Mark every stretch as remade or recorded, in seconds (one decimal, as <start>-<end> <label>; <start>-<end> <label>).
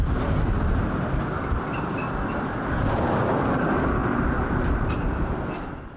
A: 0.0-1.7 recorded; 1.7-2.9 remade; 2.9-4.0 recorded; 4.0-5.4 remade; 5.4-6.0 recorded